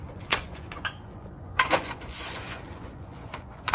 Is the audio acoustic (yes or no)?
no